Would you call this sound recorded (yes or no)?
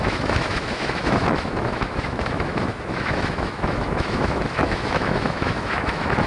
no